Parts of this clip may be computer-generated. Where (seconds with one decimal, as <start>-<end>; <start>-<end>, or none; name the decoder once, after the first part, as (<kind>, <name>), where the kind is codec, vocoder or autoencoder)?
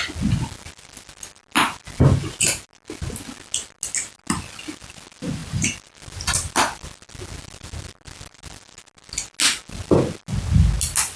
none